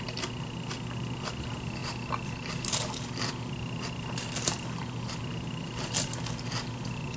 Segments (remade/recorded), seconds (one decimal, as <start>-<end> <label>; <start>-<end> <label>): 0.0-7.2 recorded